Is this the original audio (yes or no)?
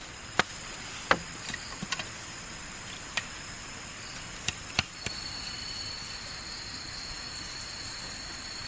no